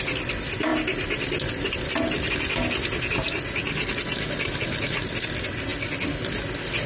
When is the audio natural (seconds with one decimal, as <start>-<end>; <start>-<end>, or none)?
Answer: 0.0-6.9